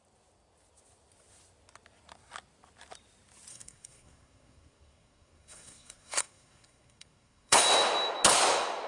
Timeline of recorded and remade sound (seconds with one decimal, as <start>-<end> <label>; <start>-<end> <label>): 0.0-3.5 recorded; 3.5-7.6 remade; 7.6-8.9 recorded